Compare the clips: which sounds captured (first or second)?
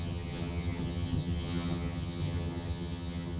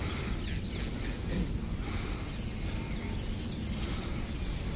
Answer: second